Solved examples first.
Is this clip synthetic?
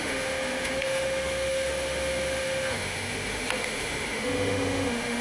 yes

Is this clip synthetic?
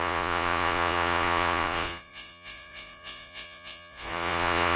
yes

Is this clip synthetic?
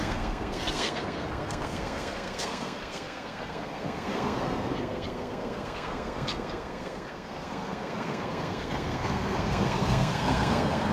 yes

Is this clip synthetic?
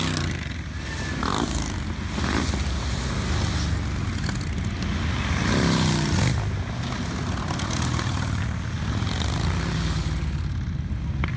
no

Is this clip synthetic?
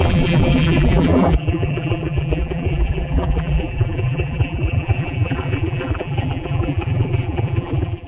yes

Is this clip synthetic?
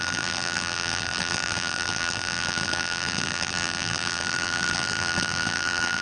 yes